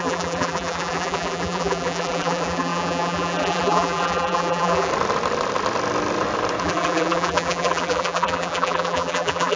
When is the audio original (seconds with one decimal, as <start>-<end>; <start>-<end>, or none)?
4.9-6.6